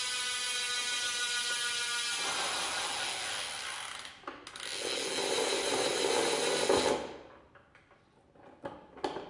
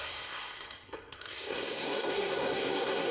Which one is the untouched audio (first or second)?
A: first